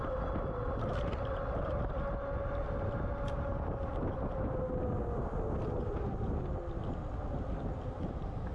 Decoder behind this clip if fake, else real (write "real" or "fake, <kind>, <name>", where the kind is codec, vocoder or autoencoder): real